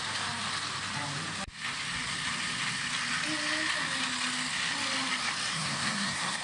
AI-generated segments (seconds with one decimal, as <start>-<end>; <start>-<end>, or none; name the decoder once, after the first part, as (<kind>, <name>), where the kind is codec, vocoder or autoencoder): 5.5-6.4 (codec, SNAC)